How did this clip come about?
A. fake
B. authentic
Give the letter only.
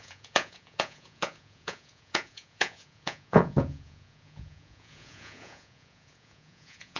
A